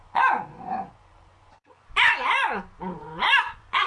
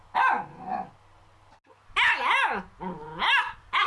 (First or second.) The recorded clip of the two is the second